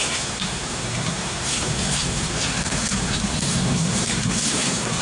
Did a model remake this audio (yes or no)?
yes